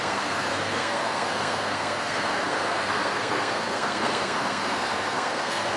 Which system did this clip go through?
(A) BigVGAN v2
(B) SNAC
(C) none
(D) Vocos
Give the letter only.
B